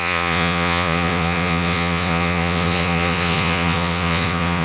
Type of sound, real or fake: fake